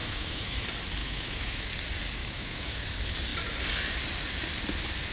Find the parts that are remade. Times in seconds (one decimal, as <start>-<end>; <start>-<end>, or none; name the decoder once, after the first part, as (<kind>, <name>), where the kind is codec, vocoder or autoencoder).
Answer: 0.0-0.6 (autoencoder, DAC-VAE); 1.0-1.7; 2.2-2.9